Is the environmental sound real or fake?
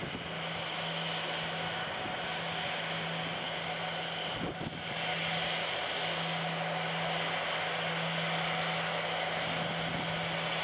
real